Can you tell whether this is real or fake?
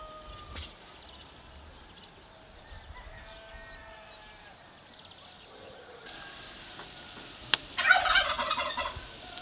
real